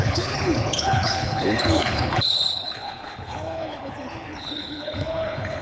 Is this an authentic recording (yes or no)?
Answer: no